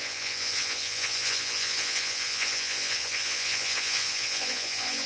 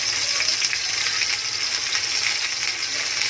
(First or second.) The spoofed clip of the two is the first